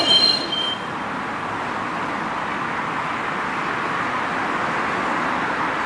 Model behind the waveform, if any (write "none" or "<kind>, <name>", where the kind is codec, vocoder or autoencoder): none